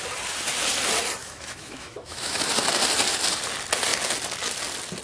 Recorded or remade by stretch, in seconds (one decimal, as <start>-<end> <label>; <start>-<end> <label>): 0.0-1.2 recorded; 1.2-2.4 remade; 2.4-5.0 recorded